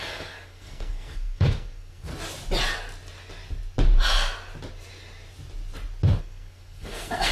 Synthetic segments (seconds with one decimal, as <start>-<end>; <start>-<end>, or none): 0.0-2.1; 6.2-7.3